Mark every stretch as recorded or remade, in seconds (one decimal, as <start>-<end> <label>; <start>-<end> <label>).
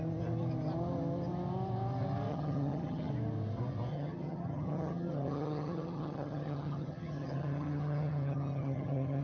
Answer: 0.0-2.3 recorded; 2.3-3.1 remade; 3.1-3.9 recorded; 3.9-9.2 remade